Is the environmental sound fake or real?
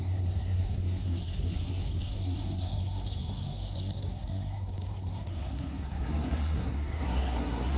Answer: fake